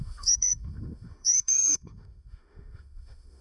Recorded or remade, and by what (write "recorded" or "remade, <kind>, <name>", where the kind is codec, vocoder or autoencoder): remade, autoencoder, DAC-VAE